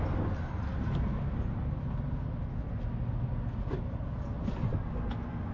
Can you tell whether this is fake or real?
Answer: real